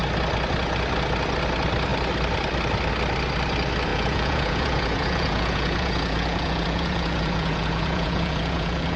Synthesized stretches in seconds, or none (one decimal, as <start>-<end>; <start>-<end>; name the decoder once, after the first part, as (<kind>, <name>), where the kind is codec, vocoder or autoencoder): 3.9-9.0 (vocoder, Vocos)